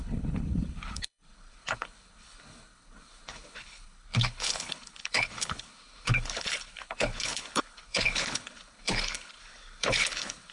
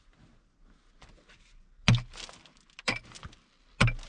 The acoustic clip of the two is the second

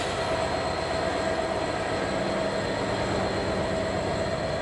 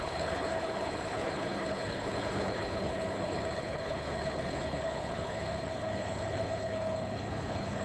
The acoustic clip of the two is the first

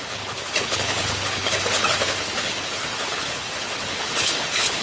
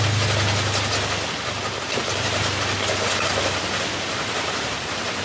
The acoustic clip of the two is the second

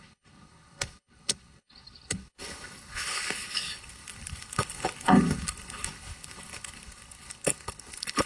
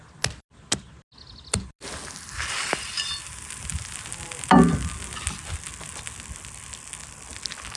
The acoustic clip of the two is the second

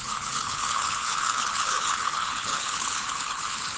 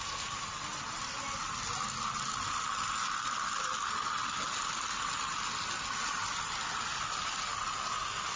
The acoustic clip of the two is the second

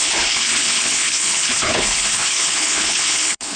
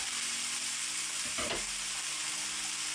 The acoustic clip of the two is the second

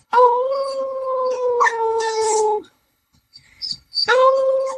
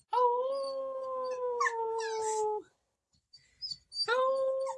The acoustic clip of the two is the second